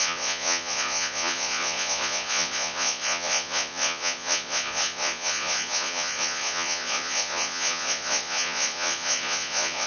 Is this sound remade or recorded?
remade